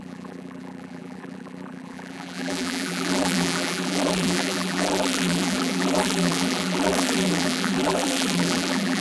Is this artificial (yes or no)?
yes